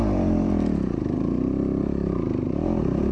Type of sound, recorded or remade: remade